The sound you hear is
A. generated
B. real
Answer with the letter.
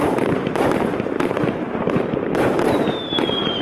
A